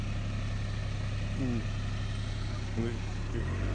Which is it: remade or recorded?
recorded